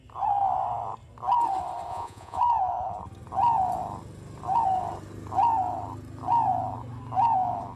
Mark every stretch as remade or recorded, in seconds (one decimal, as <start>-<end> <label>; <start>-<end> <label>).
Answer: 0.0-1.9 recorded; 1.9-2.4 remade; 2.4-7.8 recorded